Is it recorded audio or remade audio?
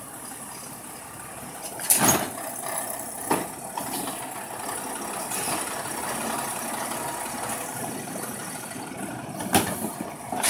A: recorded